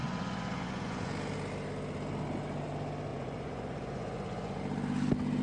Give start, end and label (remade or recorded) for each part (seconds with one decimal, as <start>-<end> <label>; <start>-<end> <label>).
0.0-1.1 remade; 1.1-3.1 recorded; 3.1-4.6 remade; 4.6-5.4 recorded